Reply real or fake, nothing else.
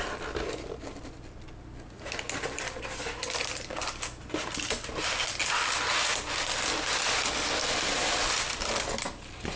real